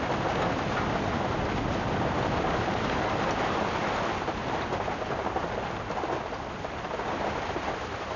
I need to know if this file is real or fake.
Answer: real